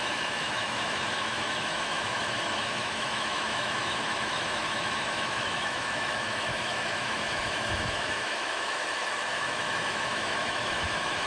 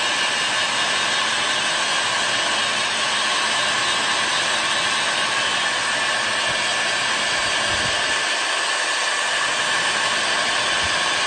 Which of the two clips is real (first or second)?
second